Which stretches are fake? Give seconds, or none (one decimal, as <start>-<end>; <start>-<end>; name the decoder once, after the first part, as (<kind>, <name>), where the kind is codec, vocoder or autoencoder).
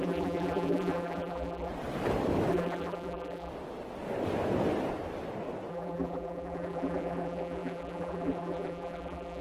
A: 0.0-1.7 (vocoder, BigVGAN v2); 2.5-3.5; 5.7-9.4